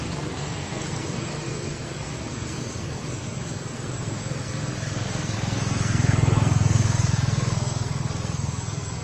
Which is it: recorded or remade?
remade